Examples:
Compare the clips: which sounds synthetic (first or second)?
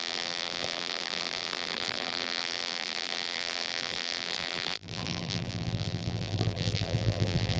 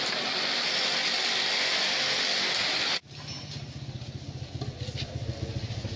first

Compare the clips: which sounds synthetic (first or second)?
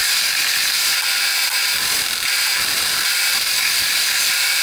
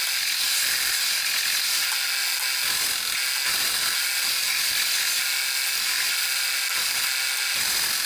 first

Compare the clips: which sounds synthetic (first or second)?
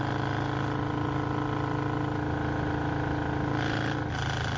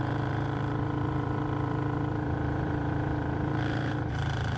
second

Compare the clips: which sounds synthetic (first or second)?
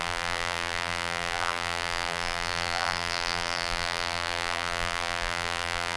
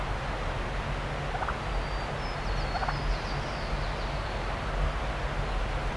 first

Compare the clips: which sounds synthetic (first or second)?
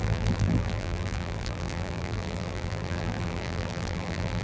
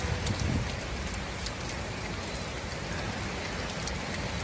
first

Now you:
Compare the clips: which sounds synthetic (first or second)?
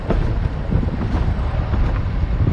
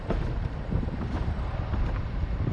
second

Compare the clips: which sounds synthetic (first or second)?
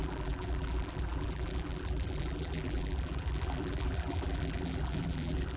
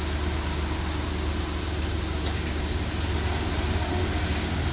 first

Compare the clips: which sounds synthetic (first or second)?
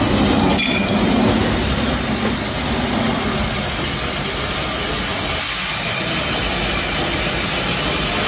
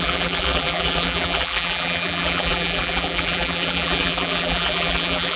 second